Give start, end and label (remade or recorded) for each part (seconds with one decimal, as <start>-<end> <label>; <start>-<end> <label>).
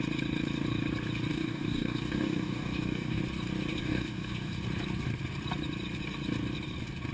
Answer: 0.0-1.3 recorded; 1.3-3.2 remade; 3.2-3.7 recorded; 3.7-4.6 remade; 4.6-7.1 recorded